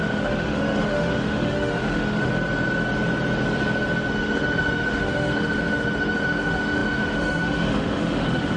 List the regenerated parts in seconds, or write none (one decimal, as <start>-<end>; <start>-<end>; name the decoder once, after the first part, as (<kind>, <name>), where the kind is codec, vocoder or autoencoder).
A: 0.0-2.3 (autoencoder, DAC-VAE); 4.1-8.6